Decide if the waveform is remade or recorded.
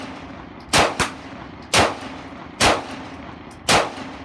recorded